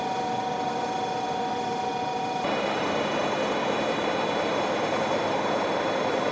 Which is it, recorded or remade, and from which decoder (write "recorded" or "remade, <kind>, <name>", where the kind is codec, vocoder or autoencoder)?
remade, vocoder, BigVGAN v2